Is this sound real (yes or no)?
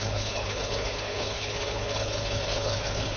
no